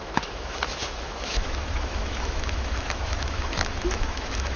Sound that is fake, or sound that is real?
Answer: fake